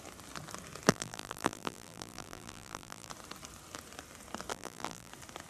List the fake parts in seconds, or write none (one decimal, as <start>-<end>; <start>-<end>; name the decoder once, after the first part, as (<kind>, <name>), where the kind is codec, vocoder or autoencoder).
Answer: 0.9-3.1 (vocoder, BigVGAN v2); 4.5-5.1

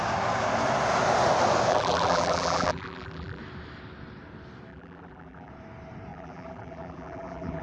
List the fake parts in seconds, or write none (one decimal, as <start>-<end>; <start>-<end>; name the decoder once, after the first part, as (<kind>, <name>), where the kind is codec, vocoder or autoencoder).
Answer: 1.7-3.4 (vocoder, BigVGAN v2); 4.7-5.5; 6.1-7.6

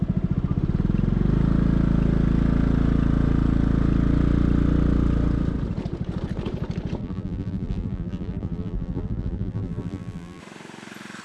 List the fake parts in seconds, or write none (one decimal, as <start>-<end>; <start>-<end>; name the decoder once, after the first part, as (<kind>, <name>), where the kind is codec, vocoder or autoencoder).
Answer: 7.0-10.4 (vocoder, BigVGAN v2)

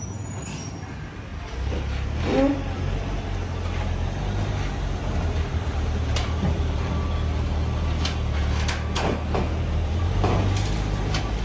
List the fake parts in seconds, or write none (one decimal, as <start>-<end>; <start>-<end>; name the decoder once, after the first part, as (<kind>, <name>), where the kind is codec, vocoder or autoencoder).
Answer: 5.5-6.9 (vocoder, BigVGAN v2); 9.5-10.2

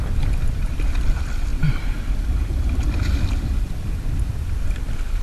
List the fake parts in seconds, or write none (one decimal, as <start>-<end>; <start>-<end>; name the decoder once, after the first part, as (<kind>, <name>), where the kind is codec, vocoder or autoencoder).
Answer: none

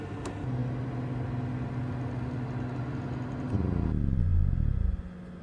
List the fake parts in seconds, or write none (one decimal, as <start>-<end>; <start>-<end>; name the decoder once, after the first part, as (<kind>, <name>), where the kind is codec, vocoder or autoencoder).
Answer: none